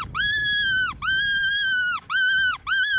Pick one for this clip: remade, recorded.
recorded